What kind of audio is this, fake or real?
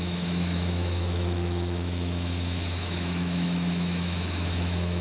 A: fake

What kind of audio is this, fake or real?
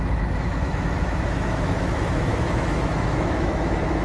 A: fake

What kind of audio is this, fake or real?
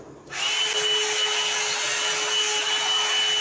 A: real